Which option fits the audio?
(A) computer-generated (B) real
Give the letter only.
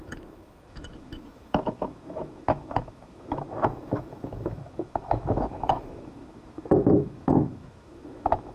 A